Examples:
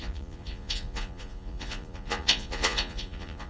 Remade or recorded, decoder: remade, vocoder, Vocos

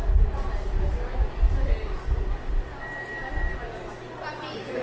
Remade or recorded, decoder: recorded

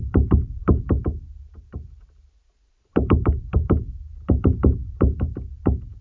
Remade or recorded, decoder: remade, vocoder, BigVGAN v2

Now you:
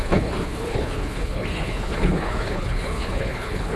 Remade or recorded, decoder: remade, codec, HILCodec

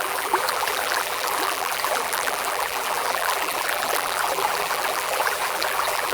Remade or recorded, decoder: remade, vocoder, BigVGAN v2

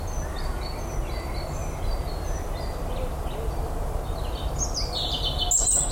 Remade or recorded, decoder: recorded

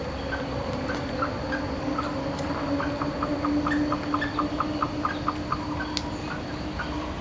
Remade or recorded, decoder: recorded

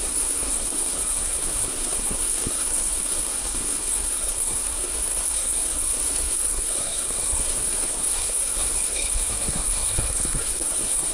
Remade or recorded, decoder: remade, codec, SNAC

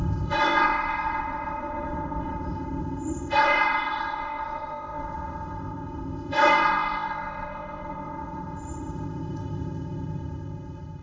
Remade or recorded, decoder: remade, codec, ZipCodec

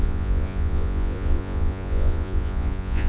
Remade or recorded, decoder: remade, vocoder, Vocos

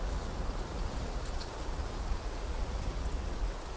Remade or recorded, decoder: remade, vocoder, Vocos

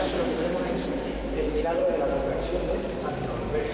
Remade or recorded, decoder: recorded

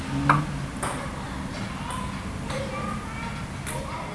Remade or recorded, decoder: recorded